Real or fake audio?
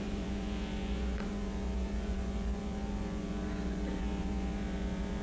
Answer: fake